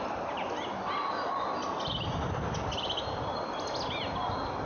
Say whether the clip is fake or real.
real